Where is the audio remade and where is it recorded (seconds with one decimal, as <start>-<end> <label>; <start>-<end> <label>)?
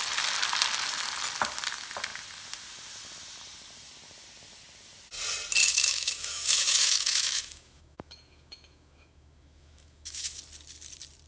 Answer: 0.0-5.6 recorded; 5.6-10.4 remade; 10.4-11.3 recorded